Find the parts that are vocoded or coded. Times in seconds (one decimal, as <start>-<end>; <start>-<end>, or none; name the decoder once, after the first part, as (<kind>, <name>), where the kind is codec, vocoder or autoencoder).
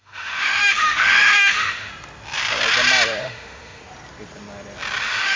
0.0-1.9 (autoencoder, DAC-VAE); 3.2-3.8; 5.0-5.4